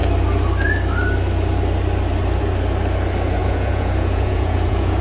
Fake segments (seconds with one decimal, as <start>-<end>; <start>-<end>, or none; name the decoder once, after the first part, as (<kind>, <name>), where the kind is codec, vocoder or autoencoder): 3.4-5.0 (vocoder, Vocos)